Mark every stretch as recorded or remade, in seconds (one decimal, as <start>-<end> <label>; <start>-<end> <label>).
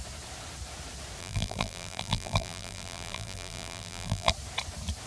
0.0-1.2 recorded; 1.2-4.3 remade; 4.3-5.1 recorded